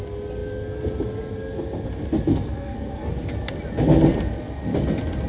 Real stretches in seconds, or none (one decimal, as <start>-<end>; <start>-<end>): 0.0-2.3; 3.1-5.3